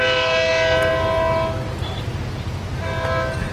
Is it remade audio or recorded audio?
recorded